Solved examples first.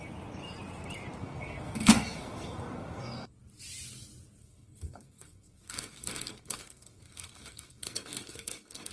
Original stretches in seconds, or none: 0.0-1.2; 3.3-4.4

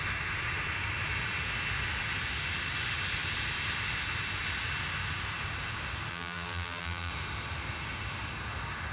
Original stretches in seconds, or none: 0.0-6.1; 7.1-8.9

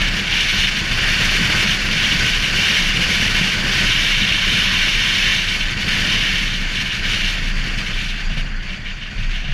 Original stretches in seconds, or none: 0.0-9.5